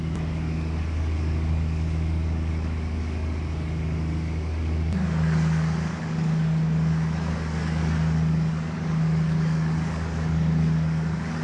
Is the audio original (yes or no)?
no